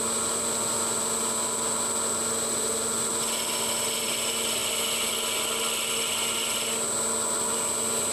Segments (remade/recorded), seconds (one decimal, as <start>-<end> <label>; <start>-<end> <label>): 0.0-8.1 recorded